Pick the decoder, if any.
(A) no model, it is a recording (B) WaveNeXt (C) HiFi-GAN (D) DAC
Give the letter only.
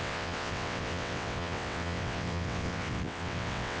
B